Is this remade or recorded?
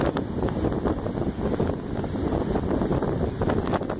recorded